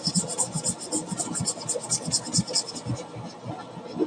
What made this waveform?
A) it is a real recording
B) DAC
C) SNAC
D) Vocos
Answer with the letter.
A